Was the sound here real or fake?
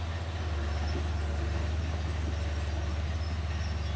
real